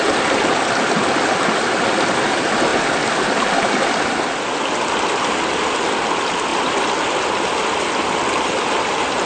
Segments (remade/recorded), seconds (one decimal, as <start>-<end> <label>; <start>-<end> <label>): 0.0-9.3 recorded